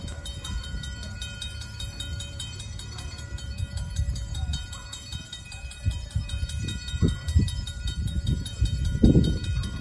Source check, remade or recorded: remade